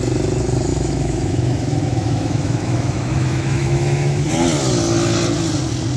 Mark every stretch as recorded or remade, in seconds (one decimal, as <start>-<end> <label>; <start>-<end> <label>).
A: 0.0-0.7 recorded; 0.7-4.3 remade; 4.3-6.0 recorded